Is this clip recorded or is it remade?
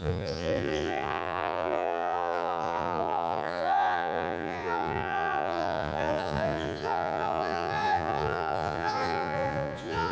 remade